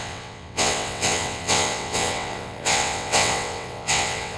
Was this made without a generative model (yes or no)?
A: no